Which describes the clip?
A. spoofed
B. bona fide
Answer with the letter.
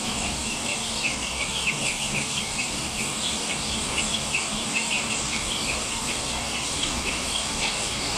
A